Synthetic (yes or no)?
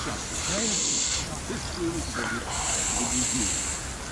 no